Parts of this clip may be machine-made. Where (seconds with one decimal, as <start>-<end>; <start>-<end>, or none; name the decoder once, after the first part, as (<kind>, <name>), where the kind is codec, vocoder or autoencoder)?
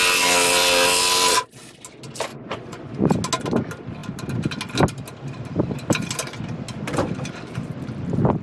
2.3-3.1 (vocoder, Vocos)